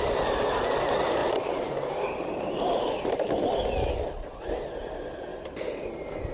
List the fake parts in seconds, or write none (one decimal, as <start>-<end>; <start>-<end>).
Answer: 1.2-3.5; 5.3-6.3